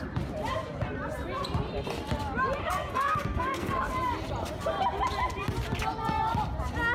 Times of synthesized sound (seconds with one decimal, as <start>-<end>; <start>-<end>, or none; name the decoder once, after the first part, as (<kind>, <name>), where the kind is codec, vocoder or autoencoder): 2.6-3.9 (codec, SNAC)